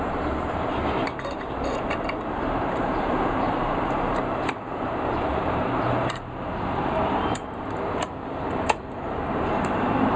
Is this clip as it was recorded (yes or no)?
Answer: no